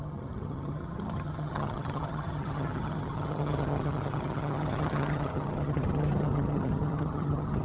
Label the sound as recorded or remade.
remade